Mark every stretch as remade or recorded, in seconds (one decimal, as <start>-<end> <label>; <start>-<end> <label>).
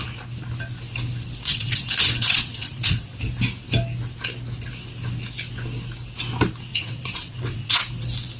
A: 0.0-1.5 recorded; 1.5-3.1 remade; 3.1-6.7 recorded; 6.7-7.8 remade; 7.8-8.4 recorded